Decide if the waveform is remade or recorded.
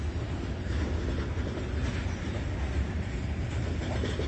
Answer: recorded